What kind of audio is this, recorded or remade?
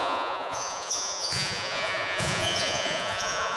remade